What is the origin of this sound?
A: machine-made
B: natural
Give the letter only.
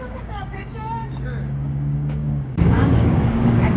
A